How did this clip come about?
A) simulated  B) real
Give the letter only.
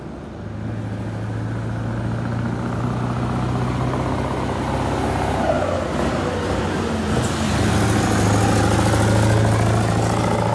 B